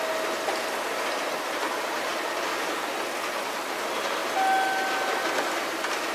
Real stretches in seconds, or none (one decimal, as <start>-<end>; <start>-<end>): 0.0-6.1